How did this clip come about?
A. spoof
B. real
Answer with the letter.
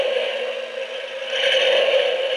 B